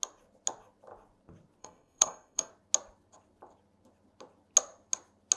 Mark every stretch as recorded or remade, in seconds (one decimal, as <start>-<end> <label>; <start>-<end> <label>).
0.0-1.6 recorded; 1.6-2.5 remade; 2.5-5.4 recorded